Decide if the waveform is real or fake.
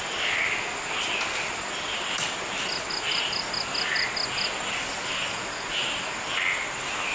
real